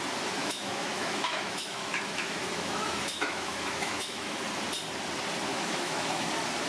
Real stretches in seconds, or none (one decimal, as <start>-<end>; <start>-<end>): 0.0-0.4; 4.4-5.5; 6.3-6.7